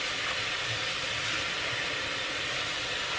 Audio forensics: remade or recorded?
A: recorded